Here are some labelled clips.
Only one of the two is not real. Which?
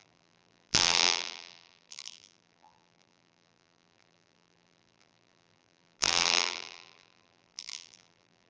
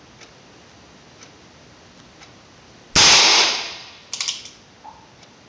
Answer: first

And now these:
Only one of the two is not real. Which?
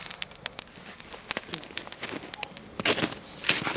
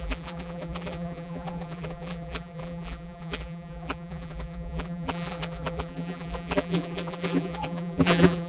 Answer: second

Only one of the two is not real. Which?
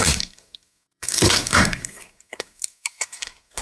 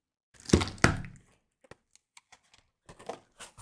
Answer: first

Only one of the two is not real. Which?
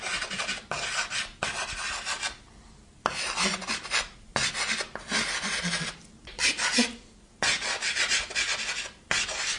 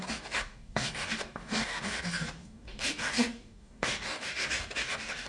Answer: second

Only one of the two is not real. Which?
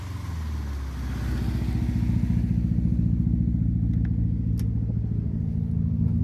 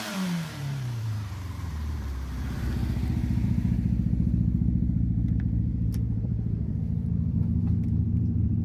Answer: second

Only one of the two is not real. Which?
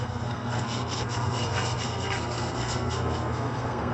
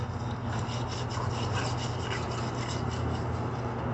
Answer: first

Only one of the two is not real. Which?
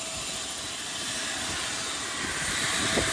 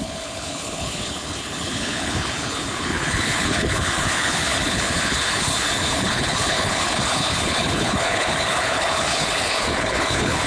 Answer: second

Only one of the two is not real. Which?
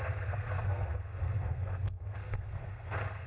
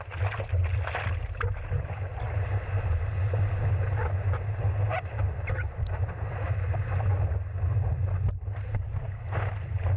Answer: first